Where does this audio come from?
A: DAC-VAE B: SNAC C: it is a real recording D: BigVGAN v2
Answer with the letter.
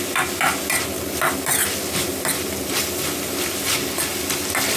C